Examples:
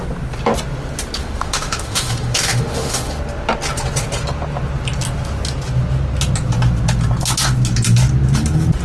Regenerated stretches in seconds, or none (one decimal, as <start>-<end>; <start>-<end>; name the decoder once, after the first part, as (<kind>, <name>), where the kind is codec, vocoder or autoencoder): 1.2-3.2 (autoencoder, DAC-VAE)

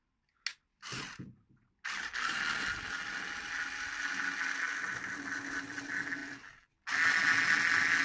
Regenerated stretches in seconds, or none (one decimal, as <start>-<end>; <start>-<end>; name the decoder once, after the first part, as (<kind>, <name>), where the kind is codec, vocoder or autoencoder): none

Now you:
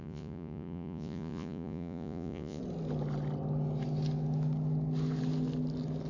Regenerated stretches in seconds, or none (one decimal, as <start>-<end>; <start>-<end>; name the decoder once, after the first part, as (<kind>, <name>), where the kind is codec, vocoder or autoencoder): 0.0-2.6 (vocoder, Vocos)

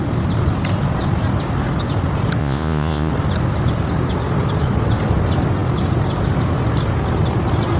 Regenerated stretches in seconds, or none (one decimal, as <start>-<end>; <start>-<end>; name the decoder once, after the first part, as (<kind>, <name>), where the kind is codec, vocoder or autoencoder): 2.4-3.1 (vocoder, Vocos)